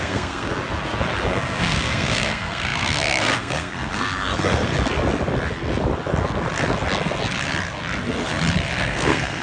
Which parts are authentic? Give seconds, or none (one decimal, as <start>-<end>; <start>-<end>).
0.5-1.3; 4.7-8.8